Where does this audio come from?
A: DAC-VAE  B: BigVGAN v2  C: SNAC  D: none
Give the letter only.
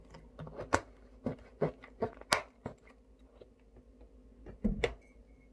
D